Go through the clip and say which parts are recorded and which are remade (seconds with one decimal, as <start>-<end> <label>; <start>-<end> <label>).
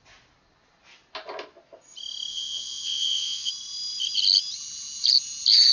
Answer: 0.0-2.3 recorded; 2.3-3.5 remade; 3.5-5.7 recorded